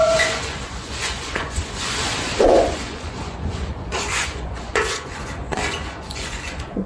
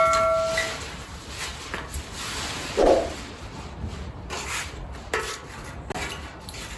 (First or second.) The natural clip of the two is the second